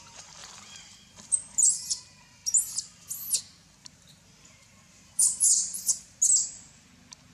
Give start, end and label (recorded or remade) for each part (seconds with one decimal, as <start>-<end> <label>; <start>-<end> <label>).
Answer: 0.0-0.4 recorded; 0.4-1.7 remade; 1.7-3.8 recorded; 3.8-5.8 remade; 5.8-7.3 recorded